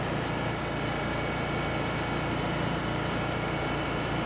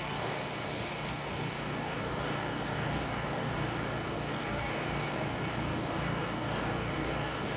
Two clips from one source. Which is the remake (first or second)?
second